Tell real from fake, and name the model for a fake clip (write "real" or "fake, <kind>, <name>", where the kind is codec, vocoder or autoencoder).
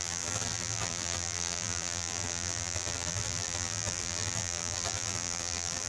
fake, vocoder, BigVGAN v2